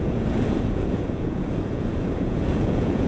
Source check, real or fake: fake